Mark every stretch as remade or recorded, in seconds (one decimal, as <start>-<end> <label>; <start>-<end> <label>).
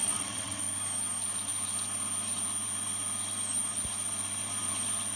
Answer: 0.0-0.6 remade; 0.6-5.2 recorded